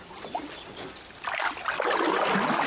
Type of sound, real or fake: fake